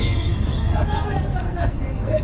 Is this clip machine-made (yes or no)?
yes